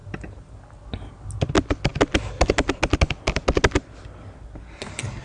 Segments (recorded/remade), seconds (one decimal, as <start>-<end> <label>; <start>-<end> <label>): 0.0-5.2 recorded